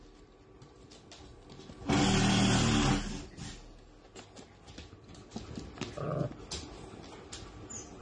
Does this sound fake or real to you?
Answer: real